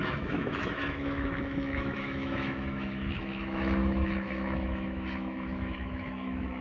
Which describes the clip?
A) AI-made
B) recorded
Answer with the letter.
A